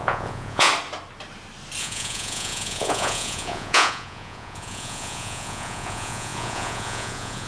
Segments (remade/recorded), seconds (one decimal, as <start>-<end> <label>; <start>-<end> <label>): 0.0-0.7 remade; 0.7-1.8 recorded; 1.8-7.5 remade